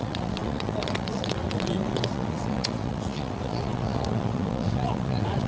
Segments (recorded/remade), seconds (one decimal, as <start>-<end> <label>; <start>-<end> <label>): 0.0-5.5 remade